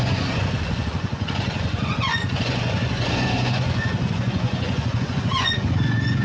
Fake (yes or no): yes